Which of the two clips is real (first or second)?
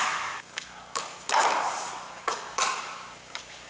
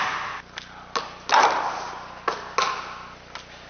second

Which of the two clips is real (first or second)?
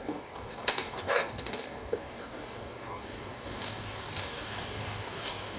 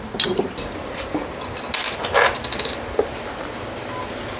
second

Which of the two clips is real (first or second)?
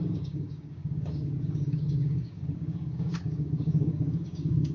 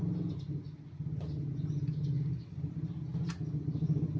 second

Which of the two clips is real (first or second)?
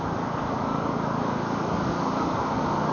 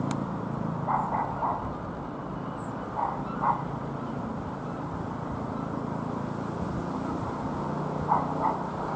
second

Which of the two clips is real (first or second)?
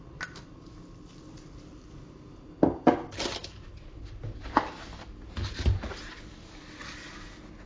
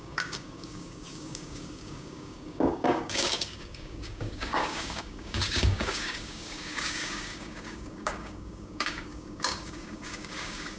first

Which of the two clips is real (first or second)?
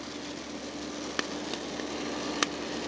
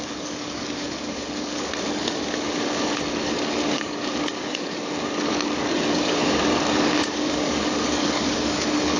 first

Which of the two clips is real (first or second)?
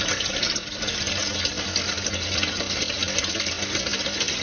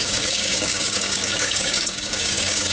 first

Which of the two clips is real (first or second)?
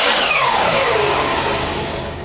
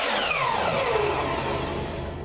second